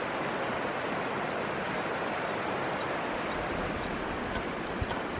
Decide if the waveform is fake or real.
real